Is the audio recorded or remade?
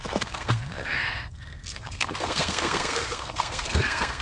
remade